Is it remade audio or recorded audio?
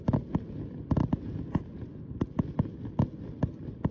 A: recorded